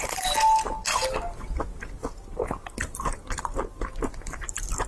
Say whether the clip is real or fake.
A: real